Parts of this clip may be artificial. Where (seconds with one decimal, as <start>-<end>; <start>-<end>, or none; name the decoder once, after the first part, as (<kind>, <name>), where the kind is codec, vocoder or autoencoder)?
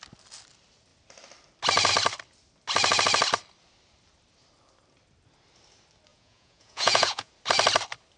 6.1-7.3 (vocoder, Vocos)